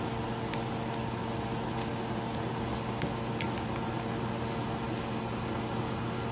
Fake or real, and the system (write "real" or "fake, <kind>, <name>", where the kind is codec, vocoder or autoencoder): real